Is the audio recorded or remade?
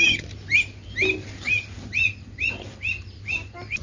recorded